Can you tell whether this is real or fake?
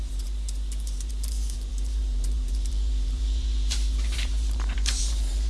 fake